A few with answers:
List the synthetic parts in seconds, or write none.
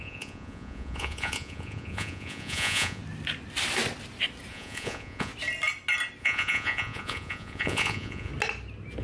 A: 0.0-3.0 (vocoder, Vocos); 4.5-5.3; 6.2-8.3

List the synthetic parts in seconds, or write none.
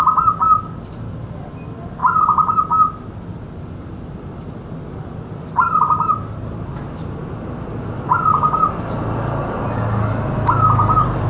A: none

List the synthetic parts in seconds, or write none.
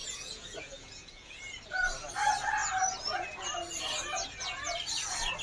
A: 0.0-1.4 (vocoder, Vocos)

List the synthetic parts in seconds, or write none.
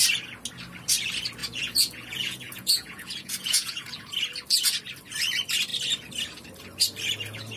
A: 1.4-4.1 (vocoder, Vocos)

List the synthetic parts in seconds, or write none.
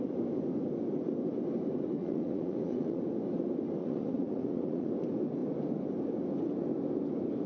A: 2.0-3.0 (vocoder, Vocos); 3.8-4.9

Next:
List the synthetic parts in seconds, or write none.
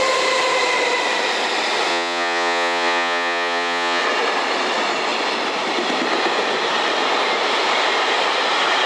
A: 1.9-4.0 (vocoder, Vocos)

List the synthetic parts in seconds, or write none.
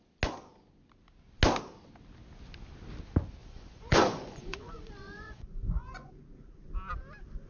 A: 3.4-6.1 (vocoder, Vocos)